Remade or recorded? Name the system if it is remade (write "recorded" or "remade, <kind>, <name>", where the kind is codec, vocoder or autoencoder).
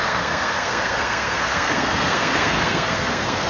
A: remade, codec, SNAC